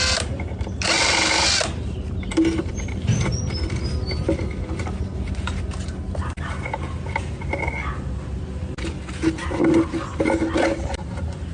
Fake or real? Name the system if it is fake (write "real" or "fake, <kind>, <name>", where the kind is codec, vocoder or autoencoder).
real